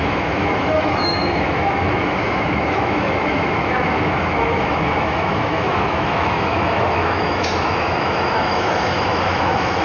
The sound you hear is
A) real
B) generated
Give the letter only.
B